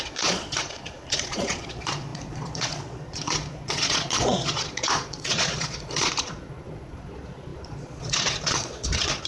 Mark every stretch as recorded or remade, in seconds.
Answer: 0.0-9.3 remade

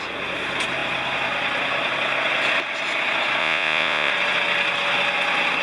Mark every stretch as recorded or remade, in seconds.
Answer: 0.0-3.4 recorded; 3.4-4.1 remade; 4.1-5.6 recorded

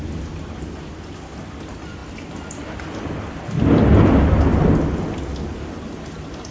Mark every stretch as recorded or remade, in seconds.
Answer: 0.0-6.5 recorded

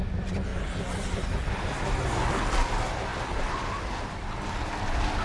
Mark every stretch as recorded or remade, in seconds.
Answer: 0.0-5.2 recorded

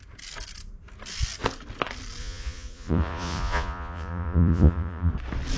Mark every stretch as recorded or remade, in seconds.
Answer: 0.0-2.2 recorded; 2.2-5.1 remade; 5.1-5.6 recorded

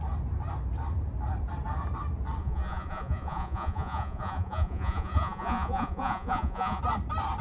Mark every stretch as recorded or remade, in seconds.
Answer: 0.0-2.4 recorded; 2.4-6.8 remade; 6.8-7.4 recorded

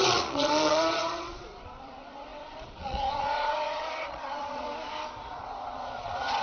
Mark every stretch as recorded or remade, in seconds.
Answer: 0.0-4.7 remade; 4.7-5.3 recorded; 5.3-6.4 remade

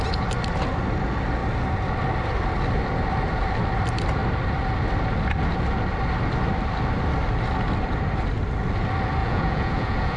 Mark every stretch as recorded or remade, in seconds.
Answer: 0.0-9.2 recorded; 9.2-10.2 remade